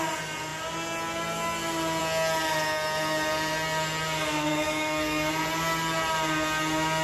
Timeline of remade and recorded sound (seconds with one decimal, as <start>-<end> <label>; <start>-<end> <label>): 0.0-4.5 recorded; 4.5-5.3 remade; 5.3-7.0 recorded